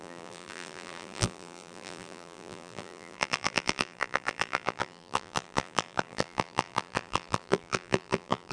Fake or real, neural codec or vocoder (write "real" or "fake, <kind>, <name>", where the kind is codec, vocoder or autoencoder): fake, vocoder, BigVGAN v2